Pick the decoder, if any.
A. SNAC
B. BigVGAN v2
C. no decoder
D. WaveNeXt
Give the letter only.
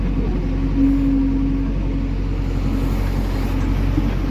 C